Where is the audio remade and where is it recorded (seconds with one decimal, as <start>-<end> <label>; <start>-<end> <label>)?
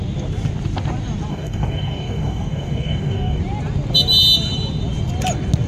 0.0-1.3 recorded; 1.3-3.4 remade; 3.4-5.7 recorded